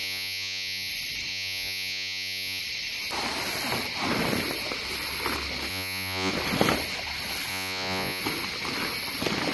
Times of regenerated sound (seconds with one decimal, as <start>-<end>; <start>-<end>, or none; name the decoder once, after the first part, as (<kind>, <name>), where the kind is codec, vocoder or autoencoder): 0.0-0.9 (vocoder, Vocos); 1.3-2.6; 5.7-6.3; 7.5-8.2